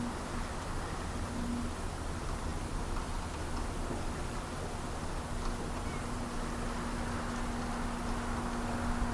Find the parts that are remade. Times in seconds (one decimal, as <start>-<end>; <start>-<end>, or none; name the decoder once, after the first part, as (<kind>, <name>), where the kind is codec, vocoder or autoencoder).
none